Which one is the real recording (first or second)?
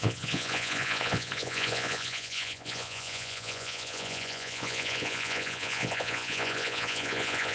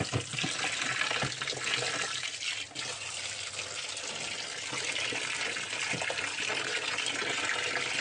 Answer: second